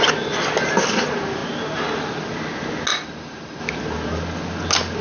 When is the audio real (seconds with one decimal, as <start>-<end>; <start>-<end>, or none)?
0.0-2.9; 3.6-5.0